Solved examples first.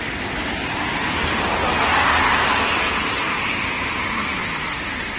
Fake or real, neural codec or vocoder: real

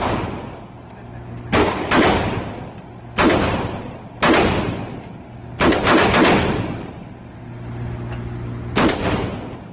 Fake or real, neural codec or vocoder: real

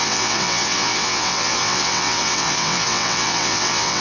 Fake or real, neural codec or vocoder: fake, vocoder, WaveNeXt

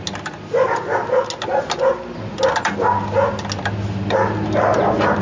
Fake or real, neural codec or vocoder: real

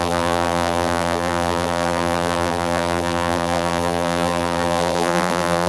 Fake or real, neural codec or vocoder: fake, vocoder, BigVGAN v2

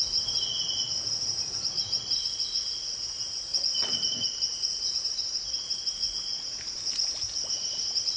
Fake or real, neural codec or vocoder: real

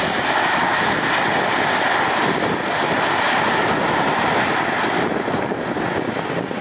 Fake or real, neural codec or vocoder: real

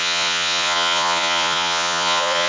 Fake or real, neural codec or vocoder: fake, vocoder, Vocos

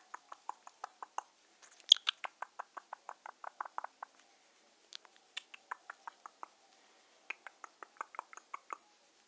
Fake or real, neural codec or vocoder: real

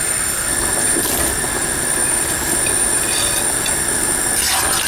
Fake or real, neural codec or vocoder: real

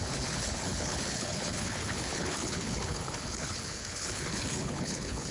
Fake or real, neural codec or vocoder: fake, codec, HILCodec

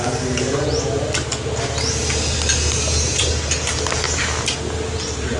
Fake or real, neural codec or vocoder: real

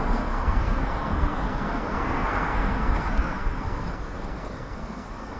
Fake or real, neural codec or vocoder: fake, codec, SNAC